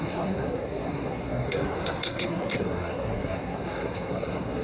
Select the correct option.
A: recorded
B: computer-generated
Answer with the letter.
B